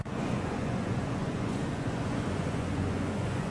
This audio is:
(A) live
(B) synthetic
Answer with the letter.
B